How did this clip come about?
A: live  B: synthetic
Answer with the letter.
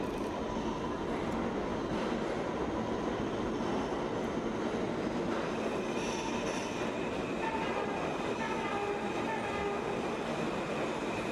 A